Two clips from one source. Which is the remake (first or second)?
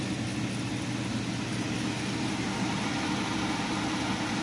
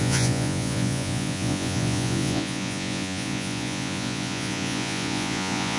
second